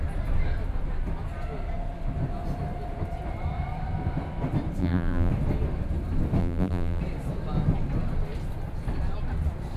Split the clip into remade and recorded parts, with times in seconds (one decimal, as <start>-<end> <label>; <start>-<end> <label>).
0.0-4.8 recorded; 4.8-5.3 remade; 5.3-6.4 recorded; 6.4-7.0 remade; 7.0-9.8 recorded